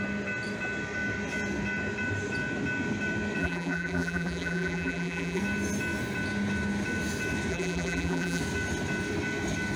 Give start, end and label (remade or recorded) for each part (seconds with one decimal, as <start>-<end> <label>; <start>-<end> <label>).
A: 0.0-3.4 recorded; 3.4-5.4 remade; 5.4-7.5 recorded; 7.5-8.4 remade; 8.4-9.8 recorded